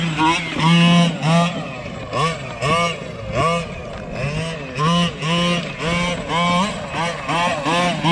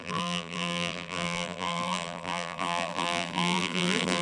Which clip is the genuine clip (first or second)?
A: first